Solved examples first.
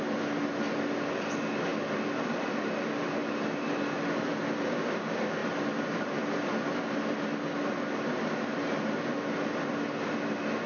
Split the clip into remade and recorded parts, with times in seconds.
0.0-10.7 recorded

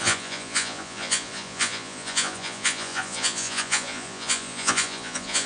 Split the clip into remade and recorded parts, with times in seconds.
0.0-5.5 remade

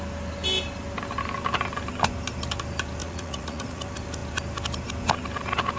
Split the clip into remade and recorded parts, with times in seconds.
0.0-3.0 recorded; 3.0-3.8 remade; 3.8-5.8 recorded

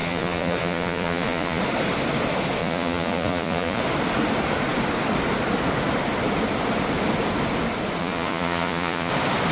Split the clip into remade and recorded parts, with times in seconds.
0.0-1.6 remade; 1.6-2.6 recorded; 2.6-3.8 remade; 3.8-8.0 recorded; 8.0-9.1 remade; 9.1-9.5 recorded

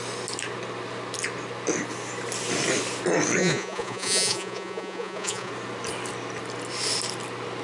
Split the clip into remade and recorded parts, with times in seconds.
0.0-3.4 recorded; 3.4-5.5 remade; 5.5-7.6 recorded

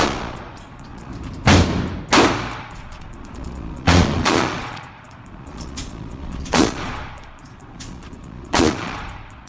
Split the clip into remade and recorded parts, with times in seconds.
0.0-1.1 remade; 1.1-2.6 recorded; 2.6-9.5 remade

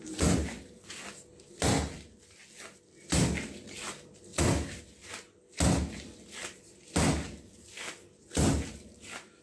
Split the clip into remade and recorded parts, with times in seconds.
0.0-9.4 recorded